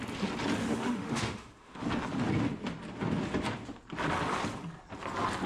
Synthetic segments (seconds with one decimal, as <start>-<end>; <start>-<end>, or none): 0.6-1.8